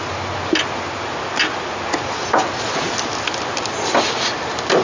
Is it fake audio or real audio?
real